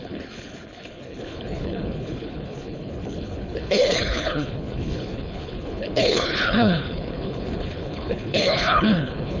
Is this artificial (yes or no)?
yes